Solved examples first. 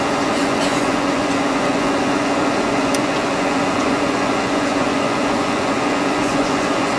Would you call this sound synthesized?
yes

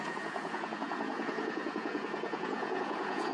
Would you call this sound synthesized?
yes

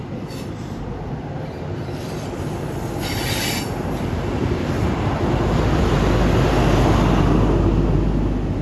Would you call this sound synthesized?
no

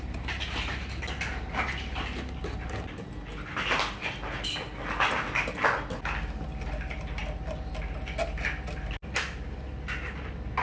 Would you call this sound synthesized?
no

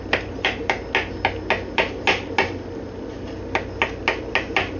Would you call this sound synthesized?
no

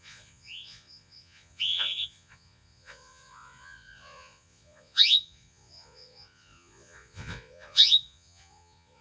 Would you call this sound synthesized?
yes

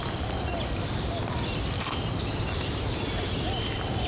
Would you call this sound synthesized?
no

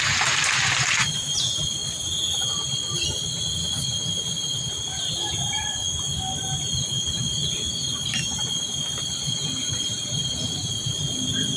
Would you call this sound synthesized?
no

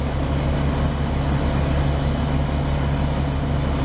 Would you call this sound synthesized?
no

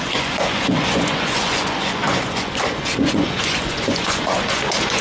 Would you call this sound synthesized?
yes